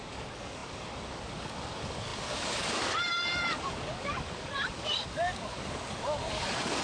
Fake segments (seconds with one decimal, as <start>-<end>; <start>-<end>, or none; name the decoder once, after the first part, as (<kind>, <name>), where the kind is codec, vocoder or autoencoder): 0.0-6.8 (codec, DAC)